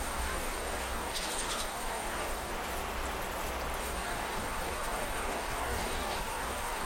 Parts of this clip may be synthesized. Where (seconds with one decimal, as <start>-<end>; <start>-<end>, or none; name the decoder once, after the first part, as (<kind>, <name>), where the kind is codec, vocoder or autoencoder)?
0.0-2.5 (codec, DAC); 3.8-6.9